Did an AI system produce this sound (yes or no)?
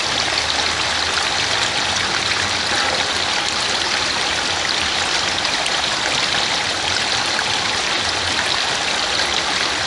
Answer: no